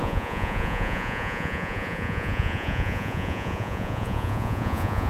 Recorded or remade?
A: remade